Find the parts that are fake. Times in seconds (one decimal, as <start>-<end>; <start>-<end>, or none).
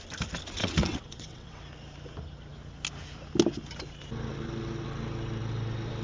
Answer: 0.6-1.6